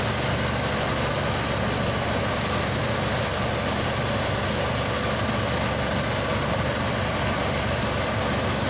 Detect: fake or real real